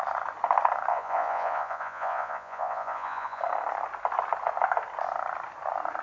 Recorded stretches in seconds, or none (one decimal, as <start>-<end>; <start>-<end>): 0.0-0.9; 3.4-6.0

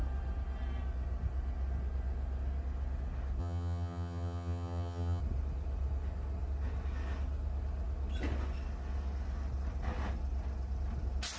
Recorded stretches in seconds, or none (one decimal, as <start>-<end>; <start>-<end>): 0.0-3.4; 5.2-11.4

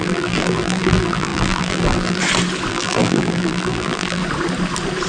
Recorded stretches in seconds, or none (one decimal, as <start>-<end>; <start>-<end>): 2.2-2.7; 4.2-5.1

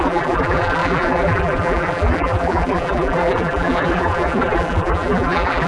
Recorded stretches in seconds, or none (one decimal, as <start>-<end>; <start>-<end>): none

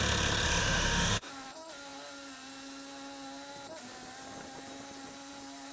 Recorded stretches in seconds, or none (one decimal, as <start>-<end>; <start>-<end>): 0.0-0.6; 1.3-5.7